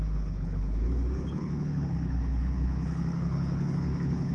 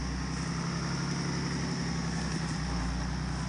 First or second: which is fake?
first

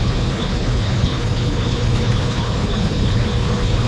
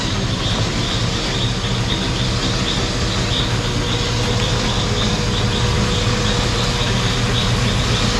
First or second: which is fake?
first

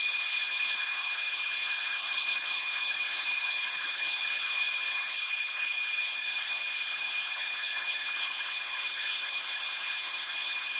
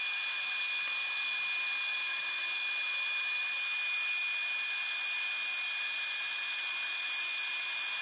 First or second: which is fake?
first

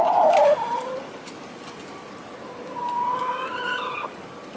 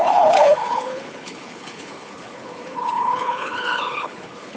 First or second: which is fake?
second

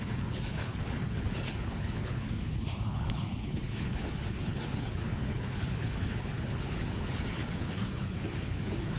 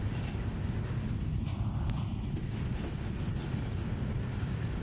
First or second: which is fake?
first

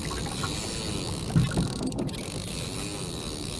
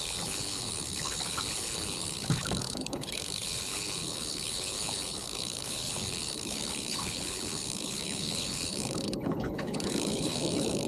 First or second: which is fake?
second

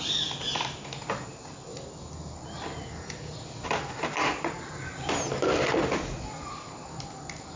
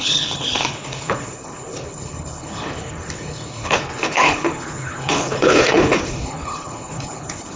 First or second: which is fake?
second